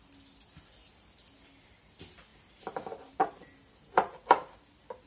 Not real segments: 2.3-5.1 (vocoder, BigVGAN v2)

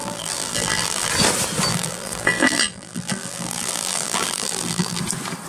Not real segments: 0.0-1.1 (vocoder, BigVGAN v2); 1.7-5.0

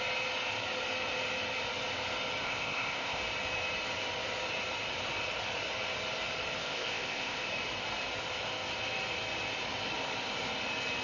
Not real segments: 2.4-3.2 (codec, ZipCodec); 6.6-7.5

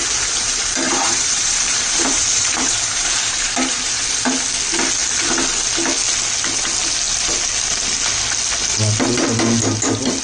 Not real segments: 0.0-4.0 (vocoder, BigVGAN v2)